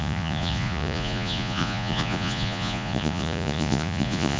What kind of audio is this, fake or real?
fake